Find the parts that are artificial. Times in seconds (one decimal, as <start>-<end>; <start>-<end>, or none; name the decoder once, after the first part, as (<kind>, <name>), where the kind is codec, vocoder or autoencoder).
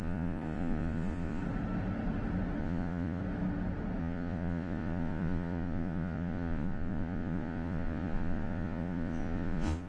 0.0-1.4 (vocoder, Vocos); 2.6-3.2; 4.0-9.9